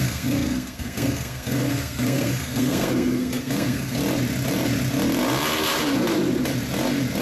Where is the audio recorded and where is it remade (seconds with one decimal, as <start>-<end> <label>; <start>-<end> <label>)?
0.0-4.0 remade; 4.0-7.2 recorded